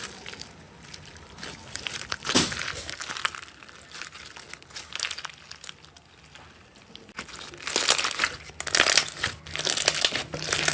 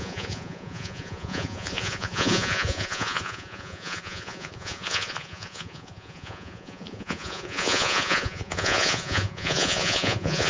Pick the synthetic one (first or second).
second